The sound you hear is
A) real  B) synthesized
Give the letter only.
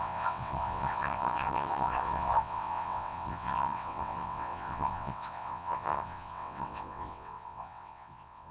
B